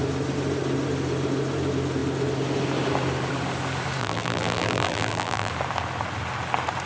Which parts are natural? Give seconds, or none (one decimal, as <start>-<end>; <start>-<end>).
0.0-4.0; 5.5-6.9